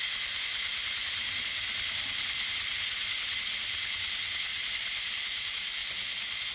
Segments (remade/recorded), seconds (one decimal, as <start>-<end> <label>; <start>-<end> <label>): 0.0-3.6 recorded; 3.6-5.2 remade; 5.2-6.5 recorded